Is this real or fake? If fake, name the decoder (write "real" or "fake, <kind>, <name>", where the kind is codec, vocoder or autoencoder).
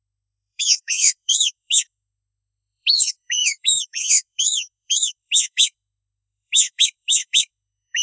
fake, autoencoder, DAC-VAE